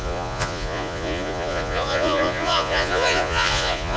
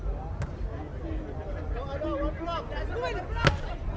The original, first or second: second